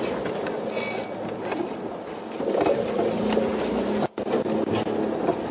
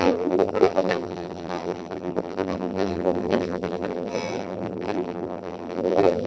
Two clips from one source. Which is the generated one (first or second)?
second